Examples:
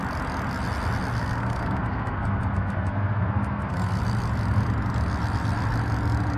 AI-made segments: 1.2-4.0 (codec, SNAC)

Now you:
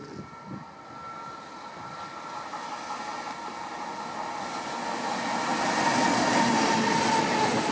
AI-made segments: none